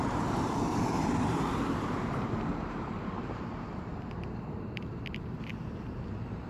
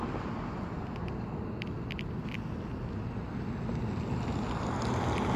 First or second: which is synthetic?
first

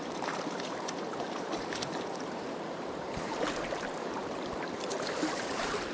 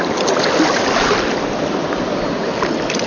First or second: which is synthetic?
first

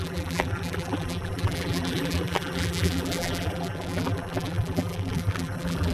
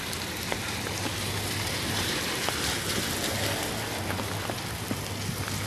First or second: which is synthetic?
first